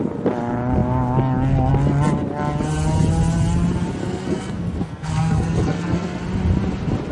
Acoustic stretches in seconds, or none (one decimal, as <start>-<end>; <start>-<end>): 0.0-4.0; 6.2-7.1